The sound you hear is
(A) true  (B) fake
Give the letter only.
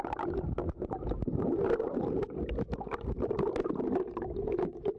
A